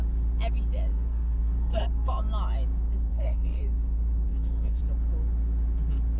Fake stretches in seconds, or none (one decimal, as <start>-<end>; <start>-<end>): 0.9-2.1; 3.1-3.6; 4.3-4.8